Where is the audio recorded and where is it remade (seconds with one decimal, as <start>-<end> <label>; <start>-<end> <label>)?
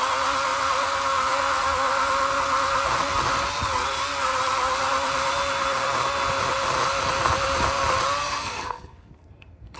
0.0-8.2 recorded; 8.2-9.8 remade